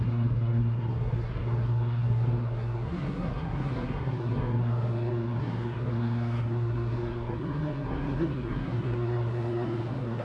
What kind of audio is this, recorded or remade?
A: remade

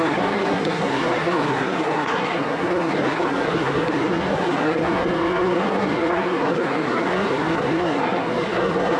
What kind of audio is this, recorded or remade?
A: remade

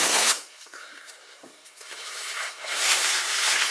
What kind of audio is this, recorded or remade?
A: remade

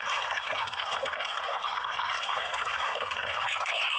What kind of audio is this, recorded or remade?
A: remade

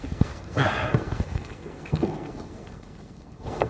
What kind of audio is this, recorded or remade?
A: remade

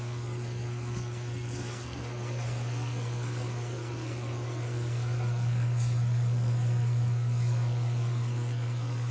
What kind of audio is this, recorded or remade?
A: remade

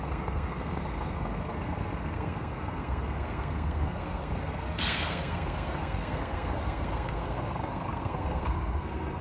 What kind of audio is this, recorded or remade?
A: remade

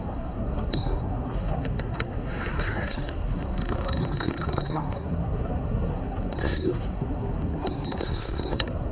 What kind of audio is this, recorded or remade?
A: remade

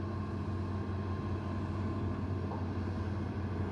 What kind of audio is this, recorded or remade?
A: recorded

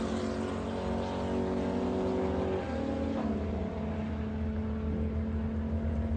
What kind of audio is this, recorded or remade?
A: recorded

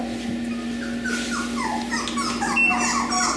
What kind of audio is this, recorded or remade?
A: recorded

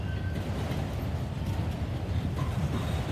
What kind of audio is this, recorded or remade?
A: recorded